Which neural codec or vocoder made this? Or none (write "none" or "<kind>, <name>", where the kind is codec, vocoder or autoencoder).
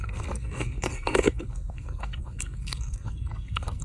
codec, SNAC